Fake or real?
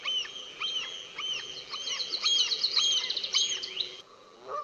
fake